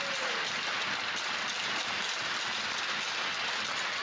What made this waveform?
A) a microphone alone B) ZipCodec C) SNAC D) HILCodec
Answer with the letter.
A